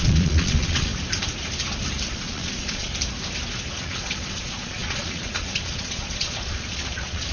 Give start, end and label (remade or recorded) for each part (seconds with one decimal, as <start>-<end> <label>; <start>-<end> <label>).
0.0-0.9 remade; 0.9-2.1 recorded; 2.1-2.9 remade; 2.9-3.8 recorded; 3.8-7.3 remade